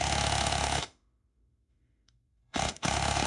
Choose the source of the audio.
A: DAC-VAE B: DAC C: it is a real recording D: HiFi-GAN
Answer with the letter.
A